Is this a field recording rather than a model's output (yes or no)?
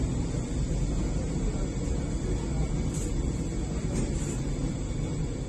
yes